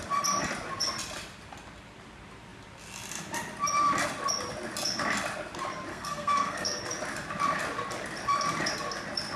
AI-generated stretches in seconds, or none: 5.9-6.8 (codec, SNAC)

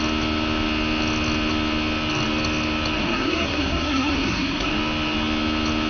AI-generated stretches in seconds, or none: 3.0-4.7 (codec, SNAC)